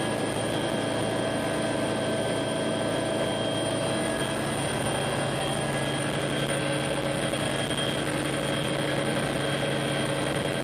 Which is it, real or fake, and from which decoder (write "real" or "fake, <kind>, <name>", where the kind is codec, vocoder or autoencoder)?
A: real